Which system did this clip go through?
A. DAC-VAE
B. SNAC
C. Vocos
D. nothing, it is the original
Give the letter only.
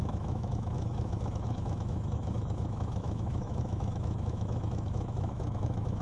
A